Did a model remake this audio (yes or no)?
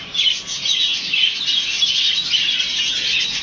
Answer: no